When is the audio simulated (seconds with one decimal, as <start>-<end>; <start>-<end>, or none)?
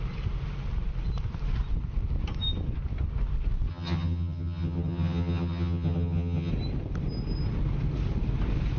3.7-6.5